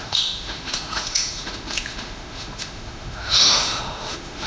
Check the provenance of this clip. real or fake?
fake